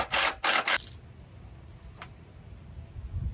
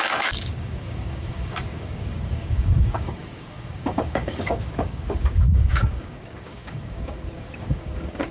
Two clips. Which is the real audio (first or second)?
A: first